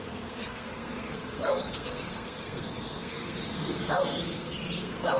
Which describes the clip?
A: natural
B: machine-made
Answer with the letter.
B